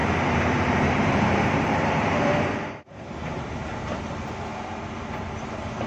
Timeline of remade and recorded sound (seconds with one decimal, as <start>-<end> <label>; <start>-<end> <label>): 0.0-3.5 remade; 3.5-5.9 recorded